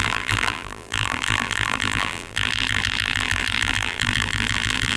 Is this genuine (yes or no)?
no